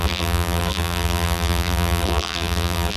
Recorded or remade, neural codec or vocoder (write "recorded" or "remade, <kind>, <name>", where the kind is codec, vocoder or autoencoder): remade, vocoder, BigVGAN v2